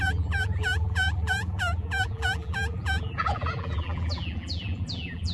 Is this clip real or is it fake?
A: fake